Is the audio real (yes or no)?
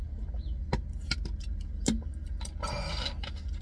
yes